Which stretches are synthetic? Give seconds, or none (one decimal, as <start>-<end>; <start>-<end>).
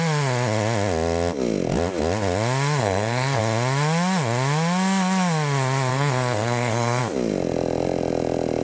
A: 2.8-3.4; 5.9-7.0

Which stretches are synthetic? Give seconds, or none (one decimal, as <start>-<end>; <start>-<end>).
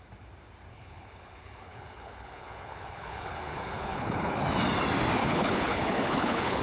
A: 0.7-4.4; 5.2-6.6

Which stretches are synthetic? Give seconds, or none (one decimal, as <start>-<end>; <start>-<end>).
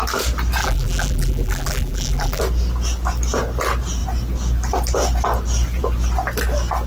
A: 0.6-2.4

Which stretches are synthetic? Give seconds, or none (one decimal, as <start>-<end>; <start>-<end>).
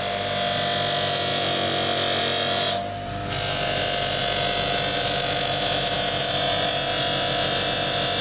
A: none